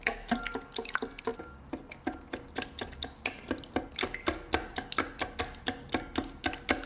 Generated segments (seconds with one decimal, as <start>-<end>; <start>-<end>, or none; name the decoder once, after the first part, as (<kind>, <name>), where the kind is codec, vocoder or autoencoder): none